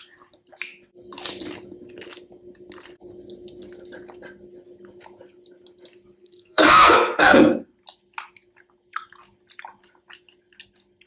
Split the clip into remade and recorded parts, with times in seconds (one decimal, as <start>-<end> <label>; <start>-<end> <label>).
0.0-6.2 recorded; 6.2-7.6 remade; 7.6-11.1 recorded